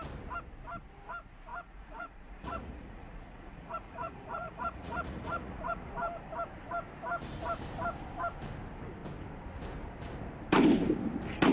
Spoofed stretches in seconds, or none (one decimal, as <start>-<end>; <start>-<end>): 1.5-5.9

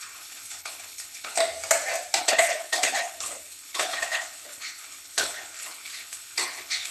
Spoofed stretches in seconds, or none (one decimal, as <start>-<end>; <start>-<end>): 0.0-1.4; 2.2-6.9

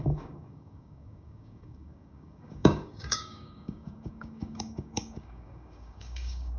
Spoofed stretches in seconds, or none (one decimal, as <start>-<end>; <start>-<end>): 0.0-6.6